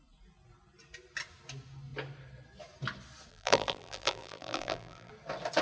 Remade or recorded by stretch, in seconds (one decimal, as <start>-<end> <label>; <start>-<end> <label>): 0.0-3.3 recorded; 3.3-5.1 remade; 5.1-5.6 recorded

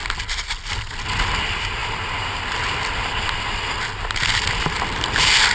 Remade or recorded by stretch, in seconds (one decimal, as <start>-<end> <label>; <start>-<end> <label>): 0.0-5.5 recorded

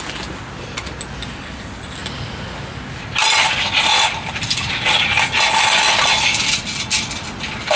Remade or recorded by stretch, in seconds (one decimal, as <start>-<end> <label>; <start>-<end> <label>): 0.0-7.8 recorded

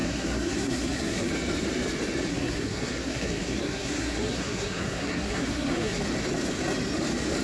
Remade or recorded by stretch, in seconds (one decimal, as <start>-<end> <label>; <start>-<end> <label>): 0.0-1.3 remade; 1.3-2.3 recorded; 2.3-6.0 remade; 6.0-7.4 recorded